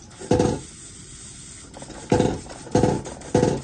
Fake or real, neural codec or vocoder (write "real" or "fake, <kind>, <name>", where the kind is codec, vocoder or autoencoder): real